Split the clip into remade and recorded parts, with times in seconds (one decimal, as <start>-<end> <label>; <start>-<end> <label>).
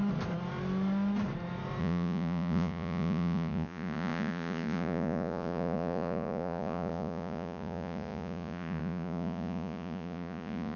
0.0-1.8 recorded; 1.8-10.8 remade